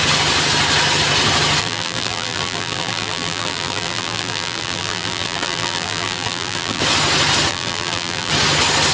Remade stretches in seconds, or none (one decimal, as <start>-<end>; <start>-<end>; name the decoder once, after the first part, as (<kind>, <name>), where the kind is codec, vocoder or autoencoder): 1.6-6.8 (vocoder, BigVGAN v2); 7.5-8.3